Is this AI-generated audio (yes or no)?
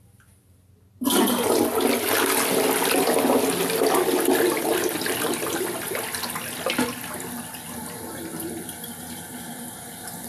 no